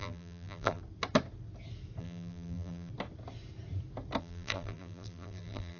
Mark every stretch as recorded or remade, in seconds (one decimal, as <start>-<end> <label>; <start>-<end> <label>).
0.0-0.8 remade; 0.8-2.0 recorded; 2.0-2.9 remade; 2.9-4.2 recorded; 4.2-5.8 remade